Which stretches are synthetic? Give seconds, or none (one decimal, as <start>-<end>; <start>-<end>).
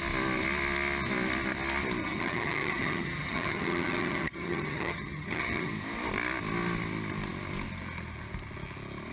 2.0-5.7